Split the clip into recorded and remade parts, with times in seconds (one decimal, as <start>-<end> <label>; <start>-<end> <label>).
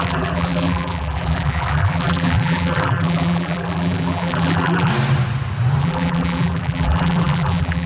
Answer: 0.0-4.9 remade; 4.9-5.8 recorded; 5.8-7.9 remade